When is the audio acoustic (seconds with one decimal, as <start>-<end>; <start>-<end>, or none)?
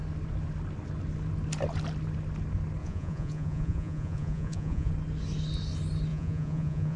0.0-2.8; 4.9-6.1